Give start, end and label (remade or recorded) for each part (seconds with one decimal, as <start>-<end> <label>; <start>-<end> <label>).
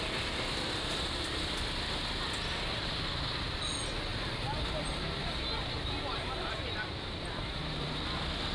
0.0-4.1 recorded; 4.1-8.5 remade